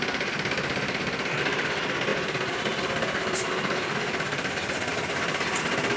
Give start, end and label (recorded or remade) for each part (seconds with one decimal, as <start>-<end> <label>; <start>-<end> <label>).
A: 0.0-6.0 recorded